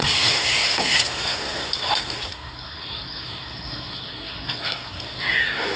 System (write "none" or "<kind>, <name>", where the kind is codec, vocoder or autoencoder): codec, SNAC